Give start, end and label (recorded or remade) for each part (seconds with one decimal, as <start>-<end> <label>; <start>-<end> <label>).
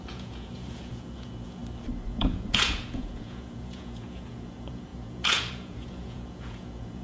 0.0-1.6 remade; 1.6-2.1 recorded; 2.1-7.0 remade